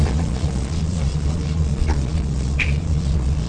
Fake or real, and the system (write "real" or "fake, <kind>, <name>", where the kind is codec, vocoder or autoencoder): fake, vocoder, Vocos